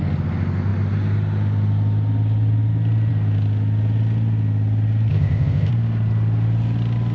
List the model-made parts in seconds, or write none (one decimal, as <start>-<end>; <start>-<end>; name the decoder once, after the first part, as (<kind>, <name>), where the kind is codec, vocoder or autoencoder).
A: 5.1-5.7 (codec, ZipCodec)